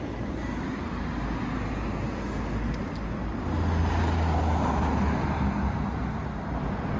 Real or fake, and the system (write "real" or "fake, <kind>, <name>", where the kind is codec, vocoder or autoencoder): real